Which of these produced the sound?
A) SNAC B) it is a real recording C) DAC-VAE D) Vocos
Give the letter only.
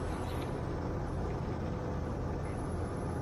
B